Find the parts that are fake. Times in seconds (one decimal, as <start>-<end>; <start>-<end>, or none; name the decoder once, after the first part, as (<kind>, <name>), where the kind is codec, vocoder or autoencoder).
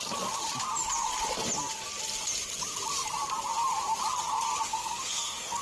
4.7-5.6 (codec, SNAC)